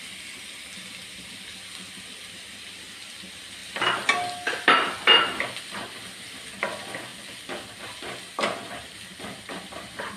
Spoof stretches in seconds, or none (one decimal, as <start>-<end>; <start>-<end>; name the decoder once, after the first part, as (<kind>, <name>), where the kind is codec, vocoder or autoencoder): none